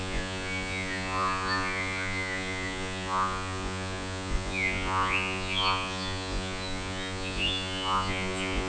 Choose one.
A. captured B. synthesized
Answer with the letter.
B